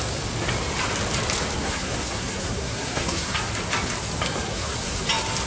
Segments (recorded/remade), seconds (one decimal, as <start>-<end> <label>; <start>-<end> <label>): 0.0-1.6 recorded; 1.6-3.4 remade; 3.4-4.5 recorded; 4.5-5.0 remade; 5.0-5.5 recorded